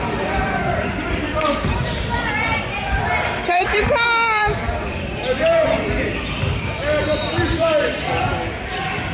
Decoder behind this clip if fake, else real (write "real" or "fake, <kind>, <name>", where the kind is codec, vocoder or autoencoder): fake, vocoder, BigVGAN v2